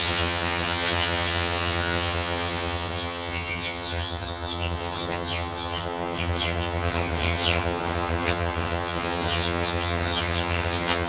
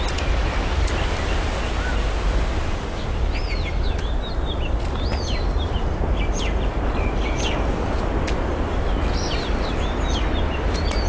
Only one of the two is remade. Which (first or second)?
first